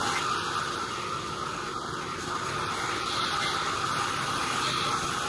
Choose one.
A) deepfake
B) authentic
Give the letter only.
B